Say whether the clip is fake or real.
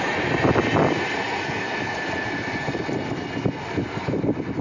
real